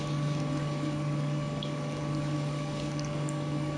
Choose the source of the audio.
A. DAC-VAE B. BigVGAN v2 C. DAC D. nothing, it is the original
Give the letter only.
C